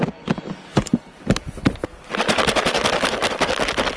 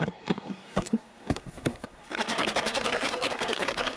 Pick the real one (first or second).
first